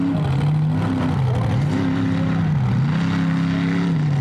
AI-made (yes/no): no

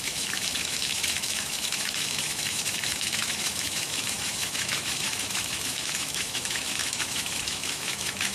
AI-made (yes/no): yes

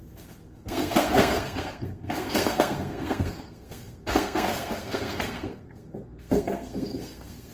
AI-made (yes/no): yes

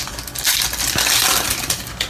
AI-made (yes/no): no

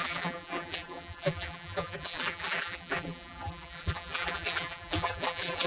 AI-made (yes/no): yes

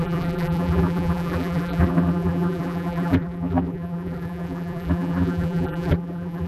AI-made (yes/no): yes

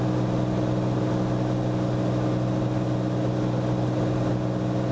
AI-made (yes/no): no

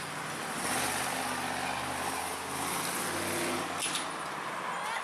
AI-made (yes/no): no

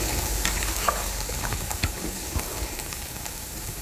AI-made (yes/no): yes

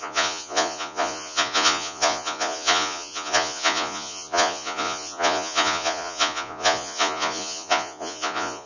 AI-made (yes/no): yes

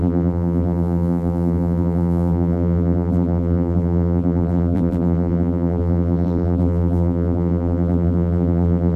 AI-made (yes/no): yes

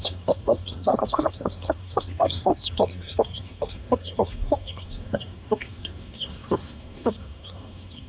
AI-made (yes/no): yes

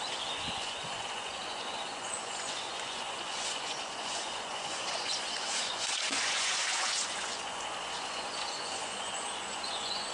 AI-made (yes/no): yes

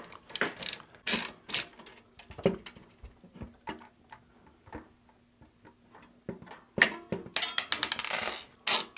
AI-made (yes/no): no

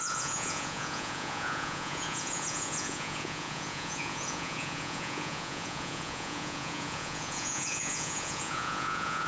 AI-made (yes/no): yes